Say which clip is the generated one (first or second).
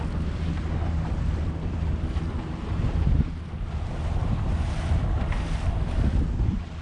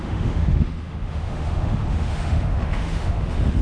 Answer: second